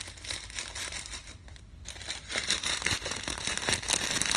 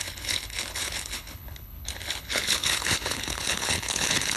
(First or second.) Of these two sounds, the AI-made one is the second